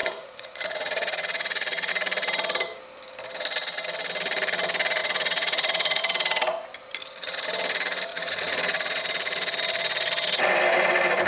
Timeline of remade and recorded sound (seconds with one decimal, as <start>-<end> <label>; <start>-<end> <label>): 0.0-1.9 remade; 1.9-5.0 recorded; 5.0-6.0 remade; 6.0-8.1 recorded; 8.1-9.0 remade; 9.0-11.3 recorded